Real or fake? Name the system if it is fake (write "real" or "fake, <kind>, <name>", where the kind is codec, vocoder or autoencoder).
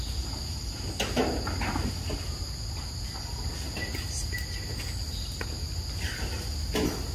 real